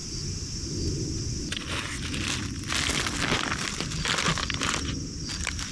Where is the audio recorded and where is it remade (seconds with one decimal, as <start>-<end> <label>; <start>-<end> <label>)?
0.0-5.7 recorded